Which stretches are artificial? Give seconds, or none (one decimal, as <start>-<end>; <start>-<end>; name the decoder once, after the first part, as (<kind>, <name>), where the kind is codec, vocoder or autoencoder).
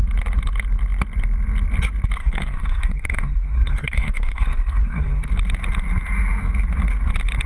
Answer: 2.2-5.3 (codec, SNAC)